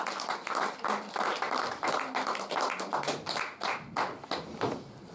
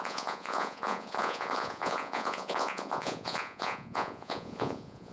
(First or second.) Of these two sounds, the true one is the first